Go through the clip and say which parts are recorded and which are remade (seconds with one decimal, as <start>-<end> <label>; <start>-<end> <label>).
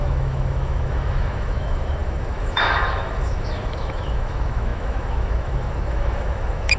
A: 0.0-6.8 remade